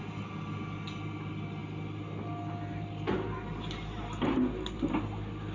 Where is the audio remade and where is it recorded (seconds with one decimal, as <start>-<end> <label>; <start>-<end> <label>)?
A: 0.0-5.5 recorded